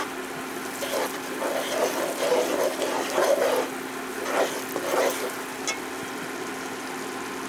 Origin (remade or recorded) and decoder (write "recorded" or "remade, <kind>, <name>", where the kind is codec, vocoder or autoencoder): recorded